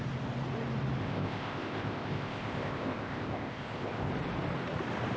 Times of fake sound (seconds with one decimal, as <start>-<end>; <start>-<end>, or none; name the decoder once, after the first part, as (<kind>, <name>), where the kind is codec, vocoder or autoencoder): 1.0-4.1 (codec, ZipCodec)